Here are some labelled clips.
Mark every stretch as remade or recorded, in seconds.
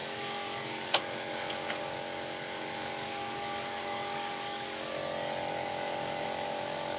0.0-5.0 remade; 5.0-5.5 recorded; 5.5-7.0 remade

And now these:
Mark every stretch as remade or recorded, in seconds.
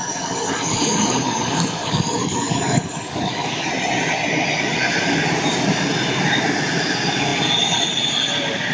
0.0-3.7 remade; 3.7-8.7 recorded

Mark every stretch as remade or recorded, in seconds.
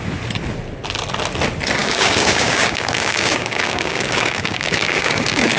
0.0-1.8 recorded; 1.8-5.6 remade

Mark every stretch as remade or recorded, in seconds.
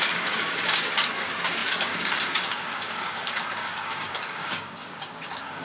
0.0-5.6 remade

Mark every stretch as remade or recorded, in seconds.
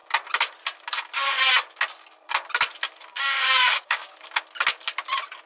0.0-3.1 recorded; 3.1-4.1 remade; 4.1-5.5 recorded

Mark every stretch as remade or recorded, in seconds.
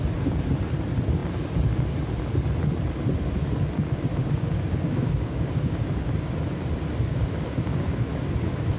0.0-4.2 recorded; 4.2-6.1 remade; 6.1-7.1 recorded; 7.1-8.1 remade; 8.1-8.8 recorded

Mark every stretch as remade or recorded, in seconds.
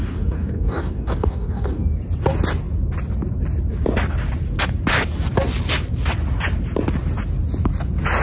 0.0-1.9 remade; 1.9-8.2 recorded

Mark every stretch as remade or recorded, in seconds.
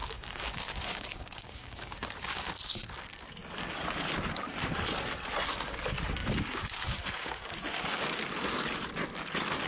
0.0-2.5 remade; 2.5-6.2 recorded; 6.2-8.0 remade; 8.0-9.7 recorded